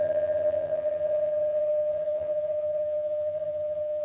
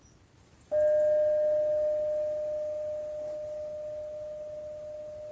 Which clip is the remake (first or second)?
first